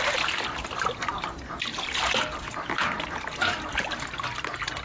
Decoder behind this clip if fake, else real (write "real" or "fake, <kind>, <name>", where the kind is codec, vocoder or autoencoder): real